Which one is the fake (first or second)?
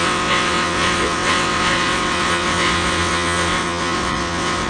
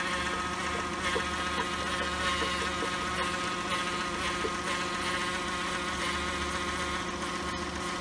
first